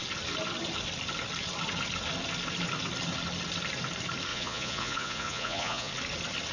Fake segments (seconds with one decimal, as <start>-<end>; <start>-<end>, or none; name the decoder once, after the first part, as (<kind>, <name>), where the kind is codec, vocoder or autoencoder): 4.3-5.9 (vocoder, Vocos)